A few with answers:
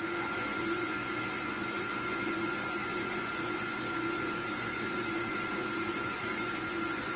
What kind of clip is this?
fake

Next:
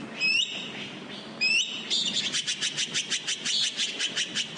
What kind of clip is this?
real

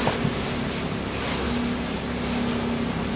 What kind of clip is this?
real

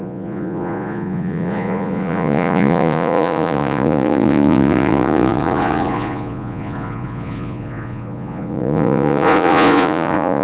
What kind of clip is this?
fake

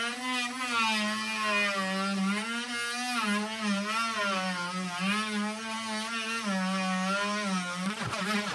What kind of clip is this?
real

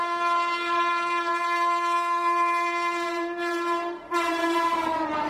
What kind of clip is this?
fake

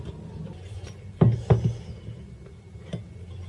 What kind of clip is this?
real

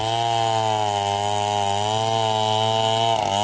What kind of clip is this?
real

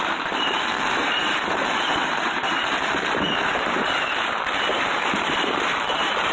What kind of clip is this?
fake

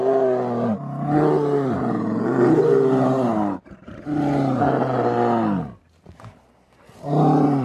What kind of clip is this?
real